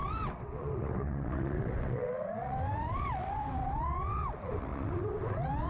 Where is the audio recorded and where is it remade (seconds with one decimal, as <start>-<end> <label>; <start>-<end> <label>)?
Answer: 0.0-5.7 remade